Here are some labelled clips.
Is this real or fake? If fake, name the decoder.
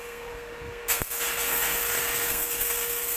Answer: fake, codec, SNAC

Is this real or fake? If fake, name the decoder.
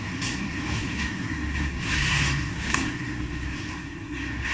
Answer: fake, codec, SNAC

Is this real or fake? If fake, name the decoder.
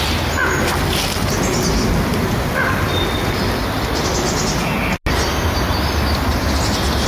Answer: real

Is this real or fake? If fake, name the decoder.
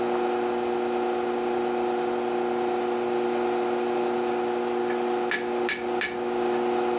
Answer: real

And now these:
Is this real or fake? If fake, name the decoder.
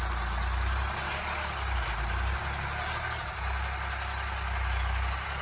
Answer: real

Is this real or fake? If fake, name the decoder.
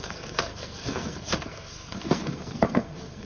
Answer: fake, codec, SNAC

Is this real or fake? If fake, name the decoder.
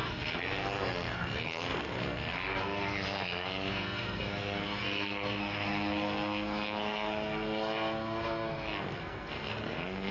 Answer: fake, codec, SNAC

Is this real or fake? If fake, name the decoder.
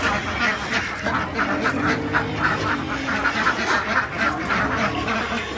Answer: real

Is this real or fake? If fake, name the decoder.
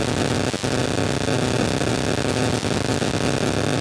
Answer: real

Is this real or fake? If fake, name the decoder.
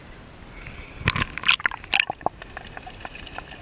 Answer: real